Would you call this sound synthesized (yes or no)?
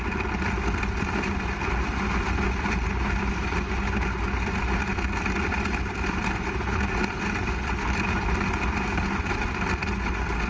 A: no